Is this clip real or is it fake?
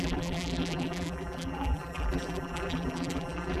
fake